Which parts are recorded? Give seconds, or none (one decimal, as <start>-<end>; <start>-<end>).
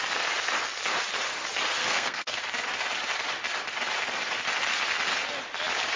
0.0-1.8; 2.4-6.0